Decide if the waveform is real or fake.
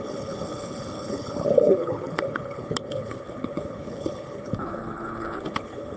fake